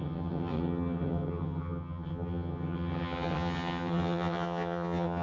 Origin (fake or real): fake